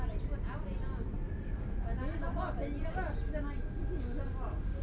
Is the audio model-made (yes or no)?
no